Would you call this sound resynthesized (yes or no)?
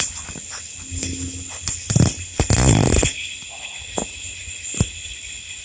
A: no